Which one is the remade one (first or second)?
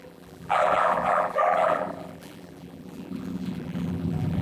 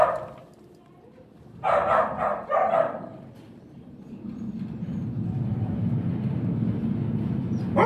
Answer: first